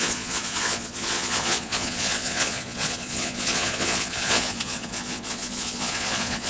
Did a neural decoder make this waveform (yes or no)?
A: yes